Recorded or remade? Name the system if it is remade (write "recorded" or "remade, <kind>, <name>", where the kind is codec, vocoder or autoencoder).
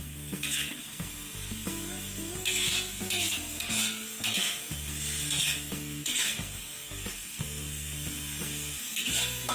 remade, codec, SNAC